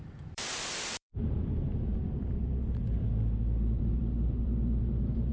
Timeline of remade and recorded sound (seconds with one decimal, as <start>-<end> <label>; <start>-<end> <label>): 0.0-5.3 remade